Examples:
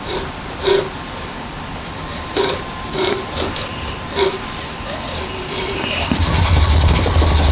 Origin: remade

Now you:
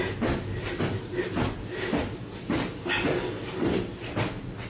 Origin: recorded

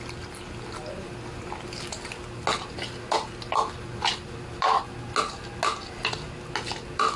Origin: recorded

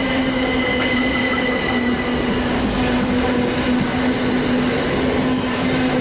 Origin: recorded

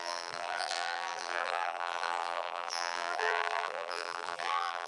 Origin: remade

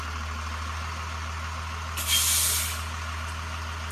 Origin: recorded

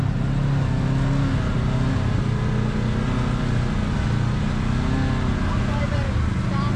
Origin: recorded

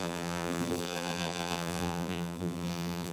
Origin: remade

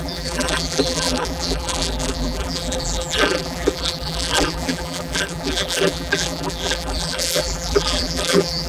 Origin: remade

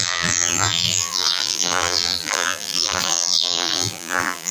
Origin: remade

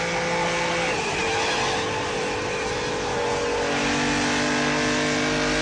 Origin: recorded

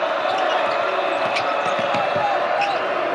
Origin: recorded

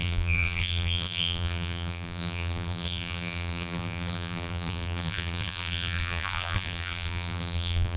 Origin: remade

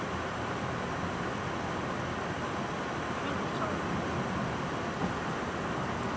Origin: recorded